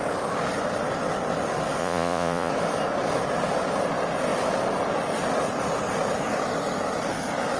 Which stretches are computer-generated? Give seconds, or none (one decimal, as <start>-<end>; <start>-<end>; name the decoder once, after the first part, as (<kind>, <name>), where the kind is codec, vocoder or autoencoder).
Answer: 1.8-2.5 (vocoder, Vocos)